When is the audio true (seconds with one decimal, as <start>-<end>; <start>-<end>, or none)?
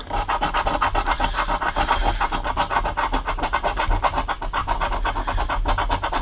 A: 0.0-6.2